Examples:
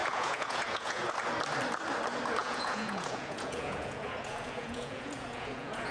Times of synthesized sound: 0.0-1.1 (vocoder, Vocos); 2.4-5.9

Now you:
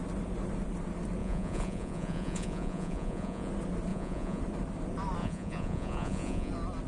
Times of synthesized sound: 1.2-3.5 (vocoder, Vocos); 3.9-4.4; 5.2-6.5

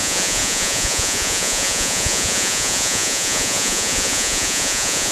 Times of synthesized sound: 0.0-5.1 (vocoder, Vocos)

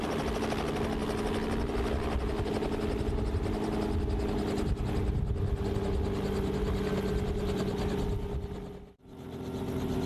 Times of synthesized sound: none